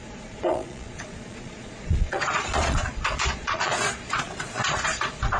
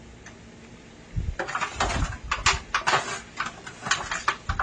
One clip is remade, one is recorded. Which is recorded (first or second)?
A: second